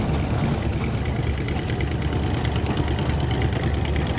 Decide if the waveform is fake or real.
real